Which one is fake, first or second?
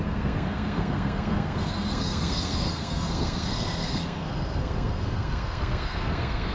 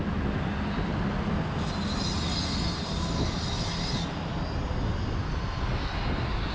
first